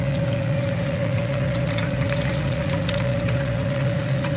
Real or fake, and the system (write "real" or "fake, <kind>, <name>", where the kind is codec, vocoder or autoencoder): fake, vocoder, Vocos